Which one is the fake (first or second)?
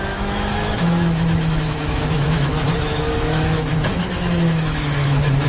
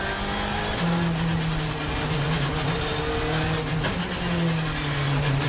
first